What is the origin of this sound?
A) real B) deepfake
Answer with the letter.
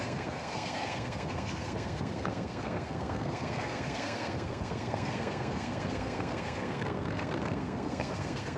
B